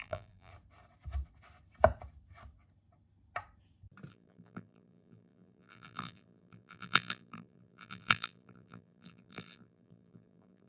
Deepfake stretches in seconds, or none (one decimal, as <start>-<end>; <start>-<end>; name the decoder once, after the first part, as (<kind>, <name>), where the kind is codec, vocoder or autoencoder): 0.0-0.5 (vocoder, BigVGAN v2); 4.1-10.7